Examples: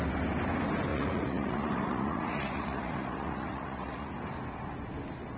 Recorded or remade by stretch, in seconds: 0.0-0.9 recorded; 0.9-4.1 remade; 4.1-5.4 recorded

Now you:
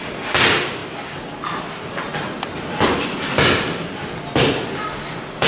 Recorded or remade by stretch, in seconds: 0.0-5.5 recorded

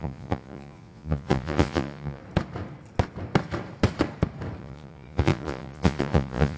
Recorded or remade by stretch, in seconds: 0.0-2.2 remade; 2.2-4.6 recorded; 4.6-6.6 remade

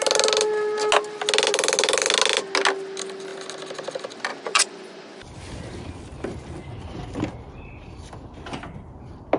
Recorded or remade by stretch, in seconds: 0.0-4.3 recorded; 4.3-5.2 remade; 5.2-9.4 recorded

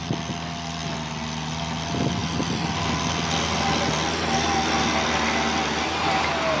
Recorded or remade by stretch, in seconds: 0.0-6.6 recorded

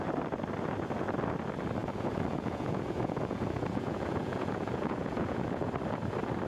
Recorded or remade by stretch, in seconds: 0.0-1.8 recorded; 1.8-5.7 remade; 5.7-6.5 recorded

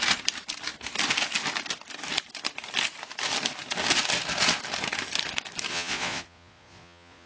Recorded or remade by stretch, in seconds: 0.0-5.7 recorded; 5.7-7.3 remade

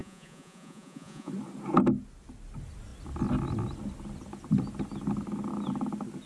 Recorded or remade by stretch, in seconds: 0.0-1.3 remade; 1.3-6.3 recorded